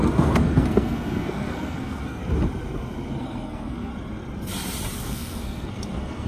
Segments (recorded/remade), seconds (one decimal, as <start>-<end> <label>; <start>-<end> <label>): 0.0-2.2 remade; 2.2-3.2 recorded; 3.2-3.9 remade; 3.9-5.0 recorded; 5.0-6.3 remade